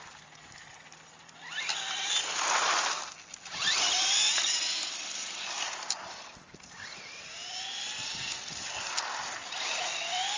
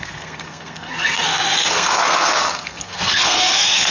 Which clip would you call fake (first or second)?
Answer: second